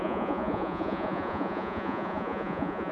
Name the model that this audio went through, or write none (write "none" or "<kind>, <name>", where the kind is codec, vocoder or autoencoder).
vocoder, Vocos